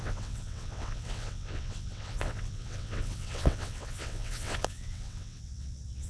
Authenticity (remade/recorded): remade